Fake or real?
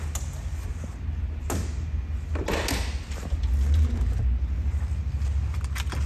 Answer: real